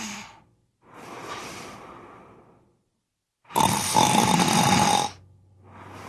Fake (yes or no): no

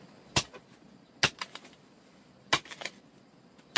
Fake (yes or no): no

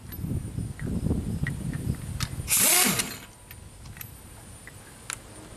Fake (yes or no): no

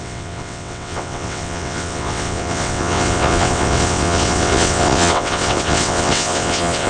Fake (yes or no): yes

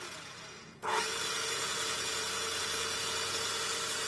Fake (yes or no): yes